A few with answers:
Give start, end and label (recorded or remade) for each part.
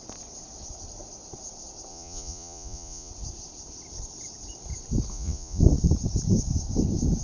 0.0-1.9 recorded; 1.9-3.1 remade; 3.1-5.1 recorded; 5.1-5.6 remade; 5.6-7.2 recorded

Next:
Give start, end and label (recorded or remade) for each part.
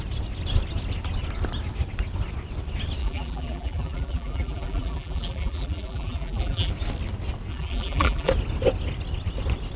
0.0-3.0 recorded; 3.0-6.7 remade; 6.7-7.5 recorded; 7.5-8.3 remade; 8.3-9.8 recorded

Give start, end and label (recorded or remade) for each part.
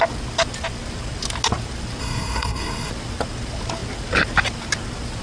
0.0-2.0 recorded; 2.0-2.9 remade; 2.9-5.2 recorded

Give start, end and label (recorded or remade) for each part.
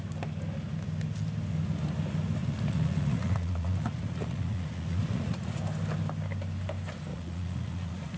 0.0-2.4 recorded; 2.4-5.6 remade; 5.6-7.1 recorded; 7.1-8.2 remade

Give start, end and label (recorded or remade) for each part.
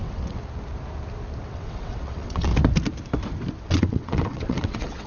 0.0-0.4 remade; 0.4-1.4 recorded; 1.4-2.5 remade; 2.5-3.7 recorded; 3.7-5.1 remade